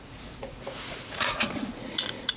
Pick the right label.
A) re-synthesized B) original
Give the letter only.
A